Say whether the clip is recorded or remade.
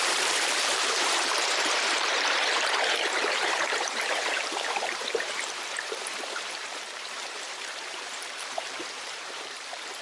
remade